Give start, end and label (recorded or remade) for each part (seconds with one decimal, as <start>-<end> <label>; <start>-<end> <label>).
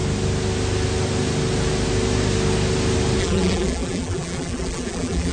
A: 0.0-3.2 recorded; 3.2-5.3 remade